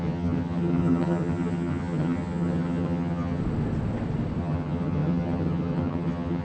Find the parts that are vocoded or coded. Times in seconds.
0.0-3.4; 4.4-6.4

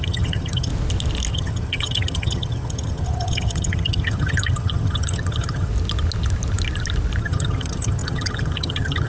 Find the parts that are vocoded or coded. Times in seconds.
0.0-0.7; 1.3-5.7; 7.2-9.1

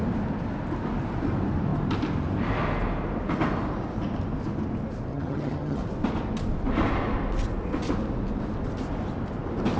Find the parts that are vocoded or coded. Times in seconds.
5.1-5.8

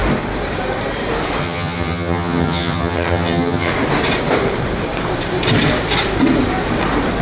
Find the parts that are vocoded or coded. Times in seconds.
1.4-3.7

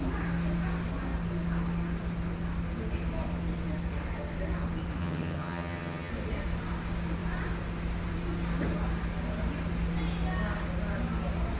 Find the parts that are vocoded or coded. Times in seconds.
5.0-6.1

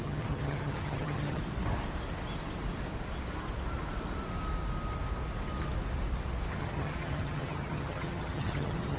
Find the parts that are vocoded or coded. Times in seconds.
0.0-1.4; 6.5-9.0